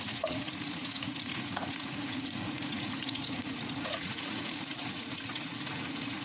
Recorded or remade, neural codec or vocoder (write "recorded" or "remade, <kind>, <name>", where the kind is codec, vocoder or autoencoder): remade, vocoder, Vocos